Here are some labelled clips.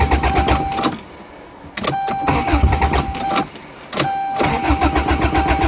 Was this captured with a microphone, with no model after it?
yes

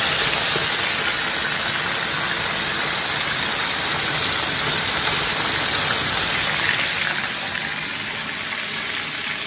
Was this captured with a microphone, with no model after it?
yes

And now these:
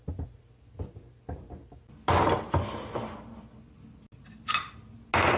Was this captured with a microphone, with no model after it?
yes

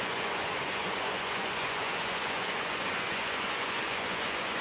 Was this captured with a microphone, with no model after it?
no